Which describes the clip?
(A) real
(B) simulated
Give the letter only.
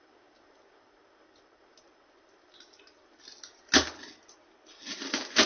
A